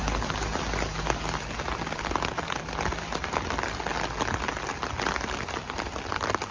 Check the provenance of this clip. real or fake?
real